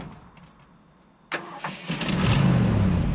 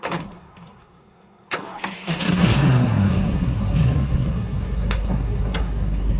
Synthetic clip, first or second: second